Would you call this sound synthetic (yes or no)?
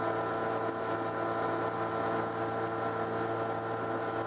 no